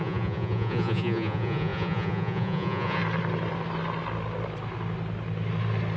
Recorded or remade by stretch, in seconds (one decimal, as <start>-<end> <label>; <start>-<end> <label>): 0.0-3.0 remade; 3.0-6.0 recorded